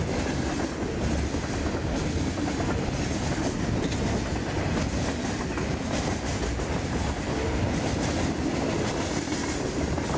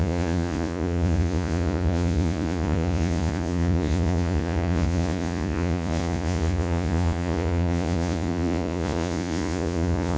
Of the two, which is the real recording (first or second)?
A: first